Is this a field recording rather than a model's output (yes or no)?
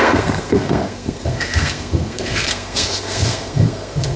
no